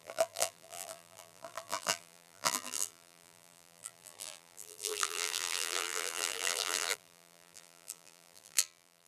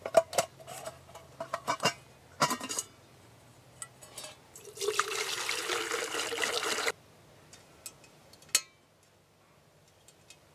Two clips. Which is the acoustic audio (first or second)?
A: second